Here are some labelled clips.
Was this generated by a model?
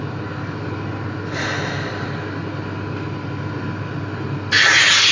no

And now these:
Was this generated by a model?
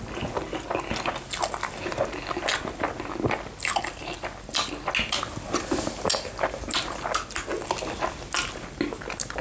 no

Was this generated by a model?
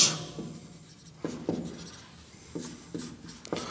no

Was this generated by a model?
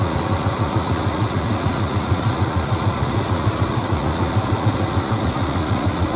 yes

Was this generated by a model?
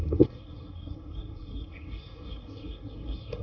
yes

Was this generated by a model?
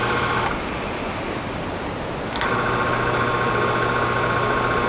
no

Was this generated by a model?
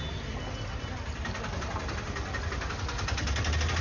no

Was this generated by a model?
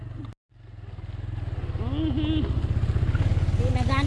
no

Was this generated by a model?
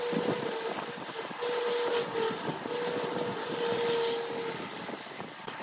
no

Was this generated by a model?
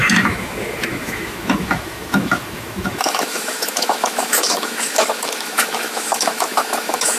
yes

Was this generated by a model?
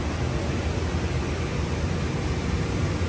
no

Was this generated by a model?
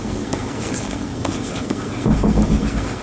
yes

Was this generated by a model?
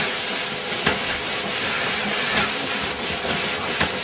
no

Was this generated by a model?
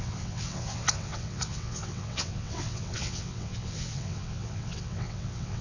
yes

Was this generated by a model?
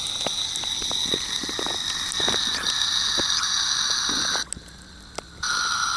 no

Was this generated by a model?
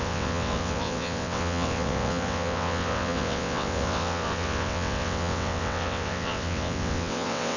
yes